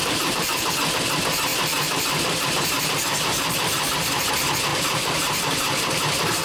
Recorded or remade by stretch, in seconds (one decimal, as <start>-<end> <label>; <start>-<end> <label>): 0.0-0.7 remade; 0.7-1.5 recorded; 1.5-4.3 remade; 4.3-4.7 recorded; 4.7-6.0 remade; 6.0-6.4 recorded